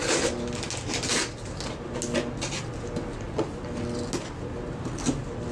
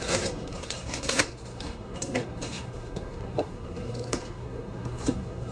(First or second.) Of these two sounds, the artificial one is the second